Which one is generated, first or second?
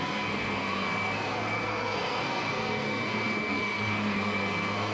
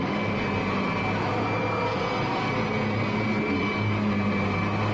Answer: first